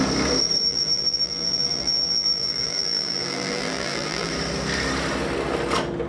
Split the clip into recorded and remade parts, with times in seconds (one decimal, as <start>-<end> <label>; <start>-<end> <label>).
0.0-0.6 recorded; 0.6-4.3 remade; 4.3-6.1 recorded